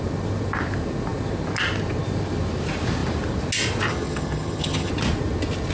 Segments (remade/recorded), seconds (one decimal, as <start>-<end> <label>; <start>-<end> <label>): 0.0-3.9 recorded; 3.9-4.9 remade; 4.9-5.7 recorded